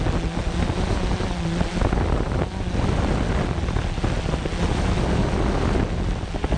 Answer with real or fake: real